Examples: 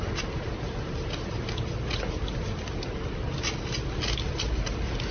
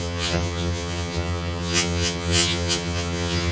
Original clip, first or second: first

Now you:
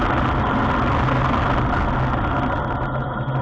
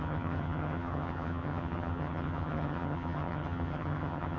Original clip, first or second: first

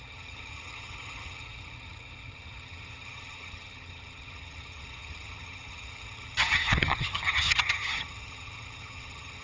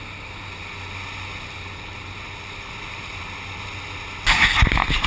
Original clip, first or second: second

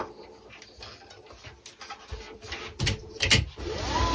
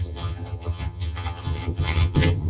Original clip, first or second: first